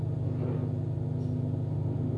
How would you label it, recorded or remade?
recorded